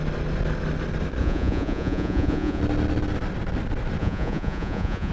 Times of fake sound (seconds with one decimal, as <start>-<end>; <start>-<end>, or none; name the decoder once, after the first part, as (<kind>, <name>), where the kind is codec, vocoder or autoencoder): 1.2-2.6 (vocoder, Vocos); 4.0-5.1